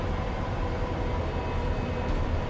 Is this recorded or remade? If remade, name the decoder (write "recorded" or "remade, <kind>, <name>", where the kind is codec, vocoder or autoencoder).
recorded